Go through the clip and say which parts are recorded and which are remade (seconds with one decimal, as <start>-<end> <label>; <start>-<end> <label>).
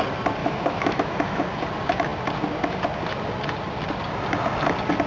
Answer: 0.0-0.4 recorded; 0.4-1.4 remade; 1.4-5.1 recorded